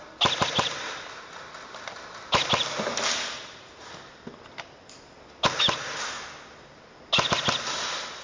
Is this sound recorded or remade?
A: recorded